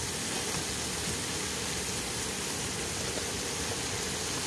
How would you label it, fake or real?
real